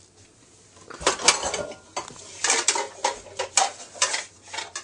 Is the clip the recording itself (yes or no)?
yes